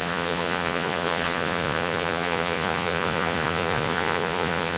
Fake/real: fake